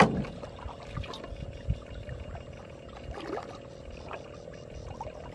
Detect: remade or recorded recorded